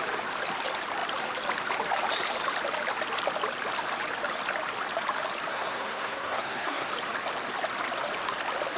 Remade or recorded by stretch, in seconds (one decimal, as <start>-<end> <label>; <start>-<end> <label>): 0.0-5.5 recorded; 5.5-6.9 remade; 6.9-8.8 recorded